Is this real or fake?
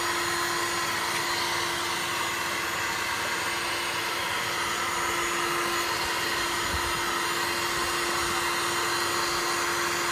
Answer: real